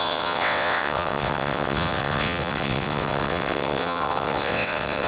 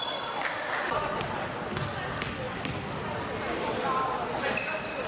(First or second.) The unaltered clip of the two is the second